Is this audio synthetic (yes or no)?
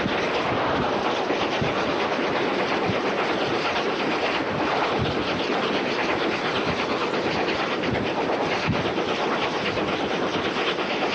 no